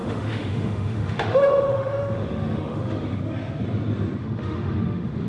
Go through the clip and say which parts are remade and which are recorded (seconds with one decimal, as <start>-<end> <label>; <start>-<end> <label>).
0.0-3.2 remade; 3.2-4.2 recorded; 4.2-5.3 remade